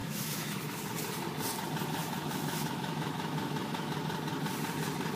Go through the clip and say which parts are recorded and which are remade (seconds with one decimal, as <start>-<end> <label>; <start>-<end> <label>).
0.0-0.8 remade; 0.8-2.0 recorded; 2.0-3.9 remade; 3.9-5.2 recorded